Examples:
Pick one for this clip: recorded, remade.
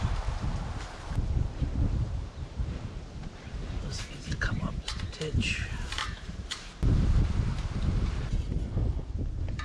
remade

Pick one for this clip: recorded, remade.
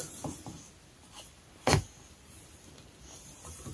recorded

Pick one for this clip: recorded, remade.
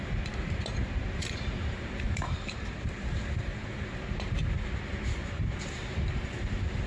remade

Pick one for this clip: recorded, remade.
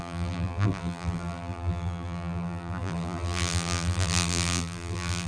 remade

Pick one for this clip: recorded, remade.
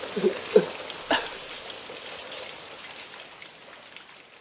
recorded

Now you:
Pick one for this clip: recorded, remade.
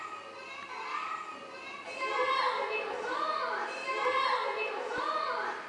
recorded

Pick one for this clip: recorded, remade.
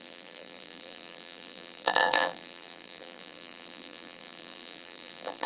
remade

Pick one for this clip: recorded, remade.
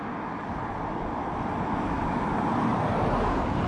recorded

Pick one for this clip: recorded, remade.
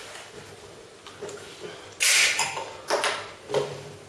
recorded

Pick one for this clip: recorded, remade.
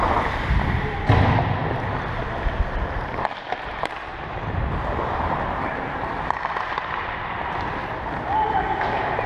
recorded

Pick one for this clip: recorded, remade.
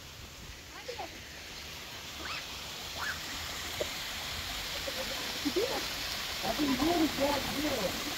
remade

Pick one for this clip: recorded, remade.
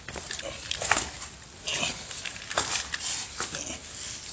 recorded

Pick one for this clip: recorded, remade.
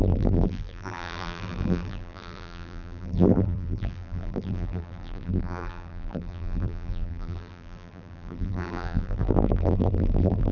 remade